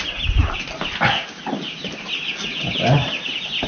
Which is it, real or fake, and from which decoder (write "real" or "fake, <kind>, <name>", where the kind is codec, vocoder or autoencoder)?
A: real